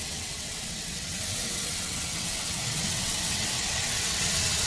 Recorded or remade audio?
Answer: remade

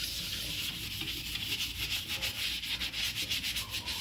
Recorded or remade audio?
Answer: recorded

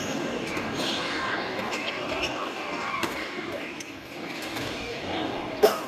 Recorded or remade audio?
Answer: remade